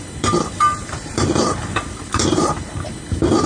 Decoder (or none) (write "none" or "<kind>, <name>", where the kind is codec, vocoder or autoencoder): vocoder, BigVGAN v2